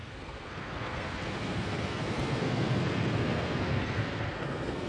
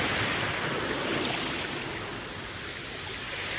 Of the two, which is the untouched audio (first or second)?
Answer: second